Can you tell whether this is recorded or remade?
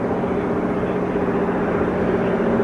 recorded